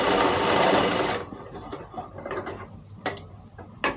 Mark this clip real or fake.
real